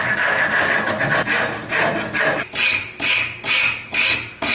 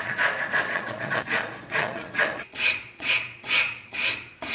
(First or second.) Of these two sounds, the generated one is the second